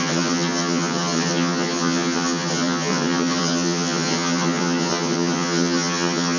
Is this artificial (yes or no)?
yes